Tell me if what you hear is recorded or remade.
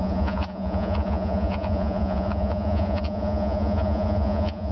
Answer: remade